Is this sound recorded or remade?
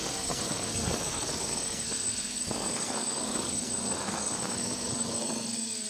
remade